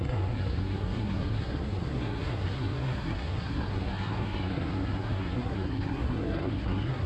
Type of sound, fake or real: fake